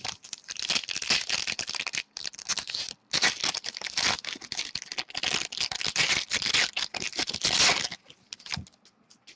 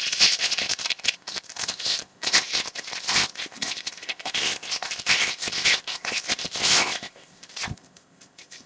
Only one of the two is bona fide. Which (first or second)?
first